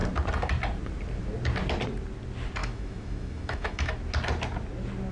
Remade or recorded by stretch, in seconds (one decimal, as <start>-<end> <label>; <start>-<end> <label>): 0.0-2.6 recorded; 2.6-3.9 remade; 3.9-5.1 recorded